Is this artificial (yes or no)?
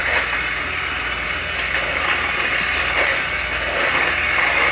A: no